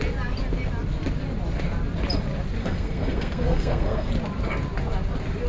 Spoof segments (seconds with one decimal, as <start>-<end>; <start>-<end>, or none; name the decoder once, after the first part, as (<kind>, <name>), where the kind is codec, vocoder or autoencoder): 2.6-4.1 (codec, SNAC)